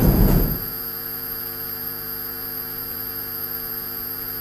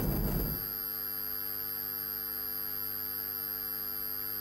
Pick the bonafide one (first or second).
second